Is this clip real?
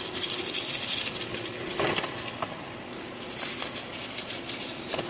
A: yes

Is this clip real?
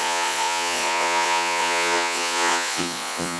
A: no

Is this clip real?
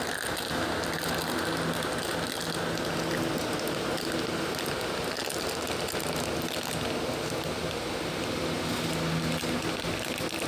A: yes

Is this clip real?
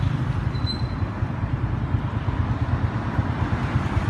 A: yes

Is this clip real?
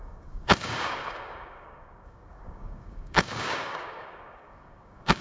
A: no